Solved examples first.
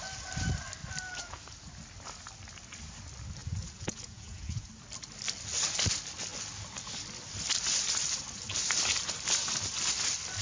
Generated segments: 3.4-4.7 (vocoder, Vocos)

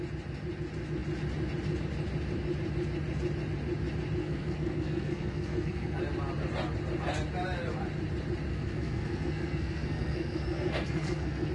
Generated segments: 4.2-6.0 (codec, SNAC); 8.5-11.5

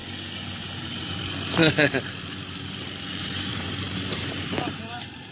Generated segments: 0.6-1.6 (vocoder, BigVGAN v2); 3.0-5.3

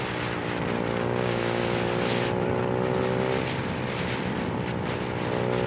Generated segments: 0.9-1.6 (codec, DAC)